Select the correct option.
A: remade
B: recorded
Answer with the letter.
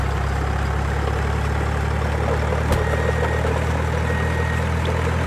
B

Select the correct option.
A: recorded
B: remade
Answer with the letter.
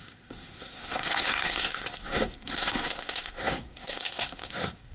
B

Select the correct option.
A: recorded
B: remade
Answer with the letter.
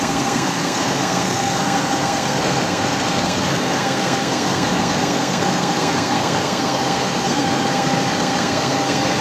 B